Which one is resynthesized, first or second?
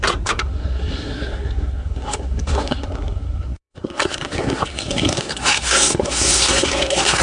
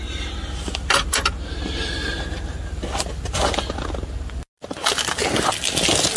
first